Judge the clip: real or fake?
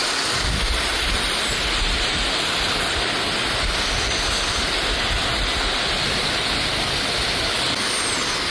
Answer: real